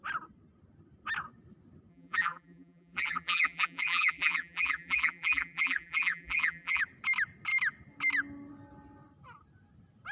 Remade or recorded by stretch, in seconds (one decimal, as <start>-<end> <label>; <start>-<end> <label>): 0.0-1.9 recorded; 1.9-6.8 remade; 6.8-10.1 recorded